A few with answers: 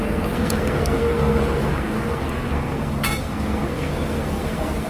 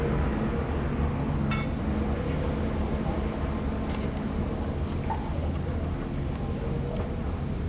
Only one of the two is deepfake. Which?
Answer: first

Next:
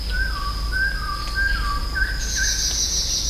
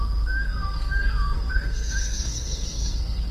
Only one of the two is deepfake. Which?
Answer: second